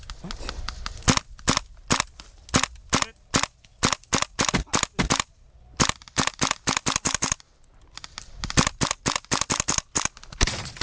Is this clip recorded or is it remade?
recorded